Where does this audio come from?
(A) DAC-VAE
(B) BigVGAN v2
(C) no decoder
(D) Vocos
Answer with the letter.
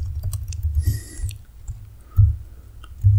C